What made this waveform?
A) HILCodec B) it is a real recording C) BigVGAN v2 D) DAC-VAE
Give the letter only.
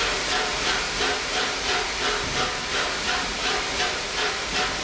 C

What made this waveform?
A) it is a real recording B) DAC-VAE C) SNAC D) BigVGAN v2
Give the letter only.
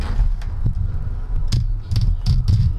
A